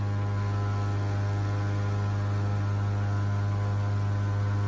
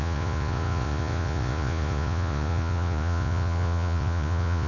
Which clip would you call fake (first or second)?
second